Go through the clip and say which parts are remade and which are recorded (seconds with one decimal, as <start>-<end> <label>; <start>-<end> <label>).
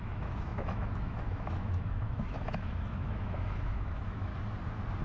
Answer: 0.0-4.3 remade; 4.3-5.0 recorded